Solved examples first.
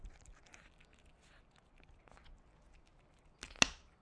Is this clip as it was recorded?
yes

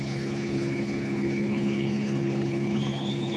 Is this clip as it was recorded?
no